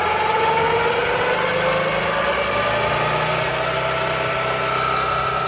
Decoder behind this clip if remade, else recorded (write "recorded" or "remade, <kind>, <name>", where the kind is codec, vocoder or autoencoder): recorded